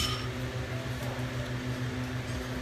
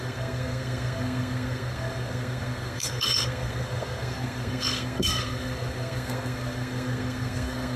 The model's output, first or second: second